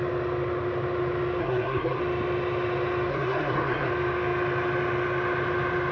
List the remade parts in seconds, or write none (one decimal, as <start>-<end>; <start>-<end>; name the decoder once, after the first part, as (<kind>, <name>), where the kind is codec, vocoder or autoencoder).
1.4-2.0 (codec, SNAC); 3.1-3.9